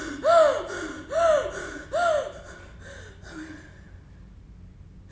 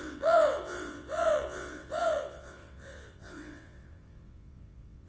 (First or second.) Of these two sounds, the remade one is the second